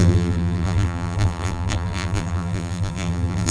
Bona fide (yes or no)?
no